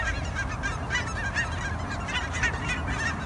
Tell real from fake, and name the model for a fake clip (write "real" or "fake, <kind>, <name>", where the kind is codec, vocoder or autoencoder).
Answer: real